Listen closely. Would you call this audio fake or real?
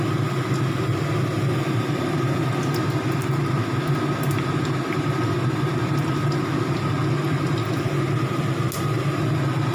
real